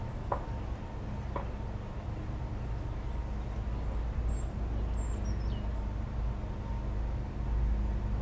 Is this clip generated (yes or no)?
no